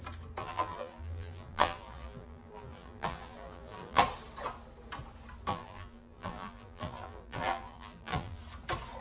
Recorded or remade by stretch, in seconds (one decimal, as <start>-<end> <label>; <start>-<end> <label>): 0.0-0.4 recorded; 0.4-4.0 remade; 4.0-5.5 recorded; 5.5-8.4 remade; 8.4-9.0 recorded